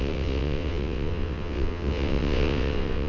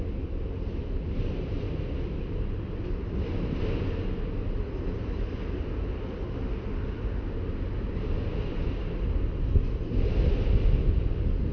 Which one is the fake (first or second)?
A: first